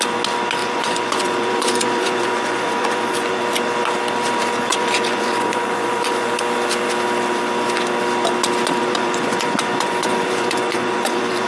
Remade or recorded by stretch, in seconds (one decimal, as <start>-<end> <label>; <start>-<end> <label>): 0.0-0.6 recorded; 0.6-3.4 remade; 3.4-4.7 recorded; 4.7-6.3 remade; 6.3-8.8 recorded; 8.8-11.5 remade